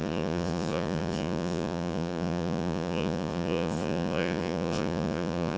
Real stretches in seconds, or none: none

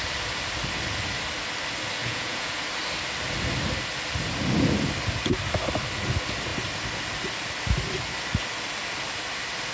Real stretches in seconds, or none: 0.0-2.0; 2.5-9.7

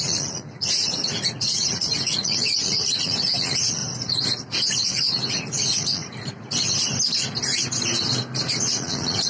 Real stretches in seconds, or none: 3.8-4.8; 6.0-8.6

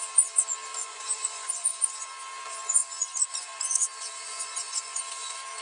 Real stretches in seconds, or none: 0.0-0.8; 1.8-4.3; 5.0-5.6

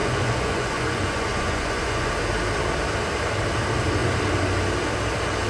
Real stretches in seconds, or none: 2.1-5.5